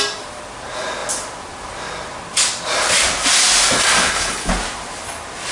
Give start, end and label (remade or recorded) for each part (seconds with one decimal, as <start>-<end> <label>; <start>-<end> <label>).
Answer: 0.0-4.0 recorded; 4.0-4.5 remade; 4.5-5.5 recorded